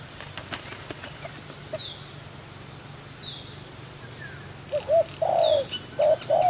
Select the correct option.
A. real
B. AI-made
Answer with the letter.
A